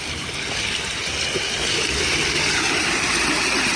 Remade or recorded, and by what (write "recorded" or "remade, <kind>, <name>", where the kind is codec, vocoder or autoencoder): recorded